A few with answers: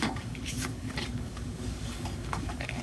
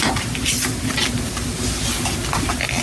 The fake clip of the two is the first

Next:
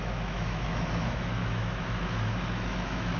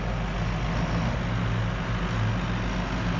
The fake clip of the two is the first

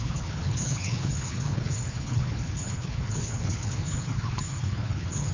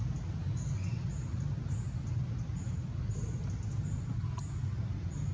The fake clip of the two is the first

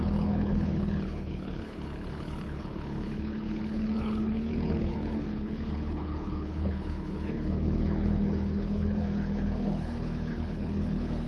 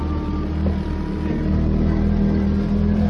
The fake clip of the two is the first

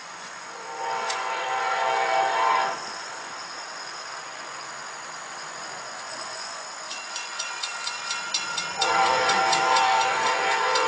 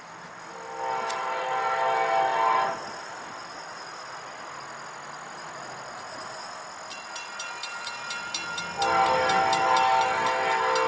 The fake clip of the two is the first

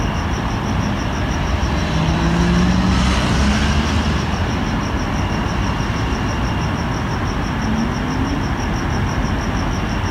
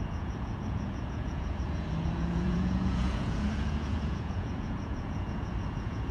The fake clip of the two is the second